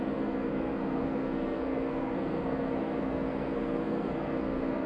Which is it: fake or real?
fake